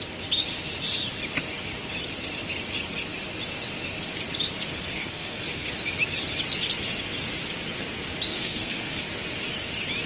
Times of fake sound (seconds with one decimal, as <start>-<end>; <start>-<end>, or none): 4.9-5.7; 8.3-9.0